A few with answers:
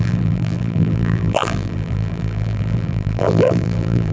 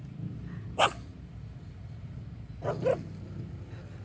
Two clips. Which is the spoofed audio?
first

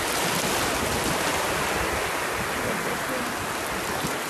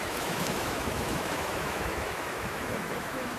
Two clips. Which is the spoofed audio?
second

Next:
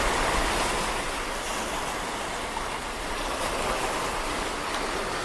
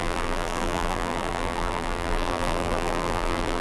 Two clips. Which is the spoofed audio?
second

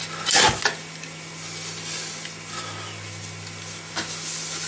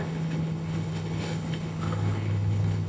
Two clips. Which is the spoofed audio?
second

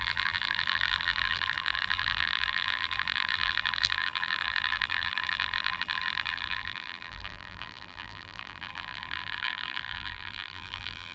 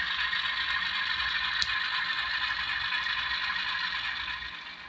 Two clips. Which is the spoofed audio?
first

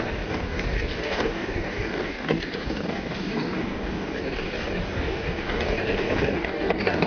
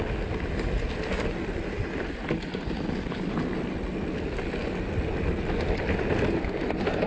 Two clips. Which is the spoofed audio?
first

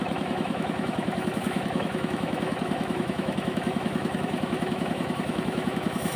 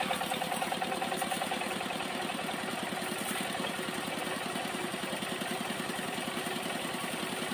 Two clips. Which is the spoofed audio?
first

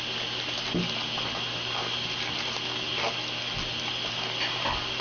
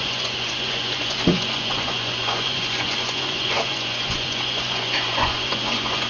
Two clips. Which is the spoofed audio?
second